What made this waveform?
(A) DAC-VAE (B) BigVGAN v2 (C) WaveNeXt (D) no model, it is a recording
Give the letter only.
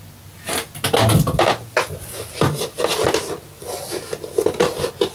D